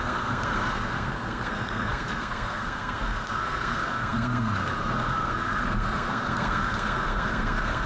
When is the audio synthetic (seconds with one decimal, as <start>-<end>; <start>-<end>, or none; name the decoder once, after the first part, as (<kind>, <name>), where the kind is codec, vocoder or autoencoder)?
0.0-7.9 (codec, SNAC)